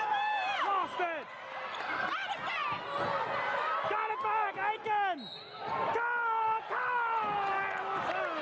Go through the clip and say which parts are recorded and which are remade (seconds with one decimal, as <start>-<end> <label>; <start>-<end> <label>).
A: 0.0-8.4 recorded